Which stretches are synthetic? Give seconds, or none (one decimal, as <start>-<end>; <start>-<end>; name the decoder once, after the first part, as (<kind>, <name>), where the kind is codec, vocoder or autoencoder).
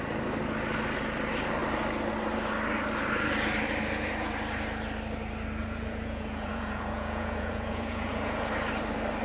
5.6-8.5 (vocoder, Vocos)